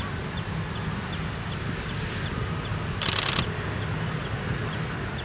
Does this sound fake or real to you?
real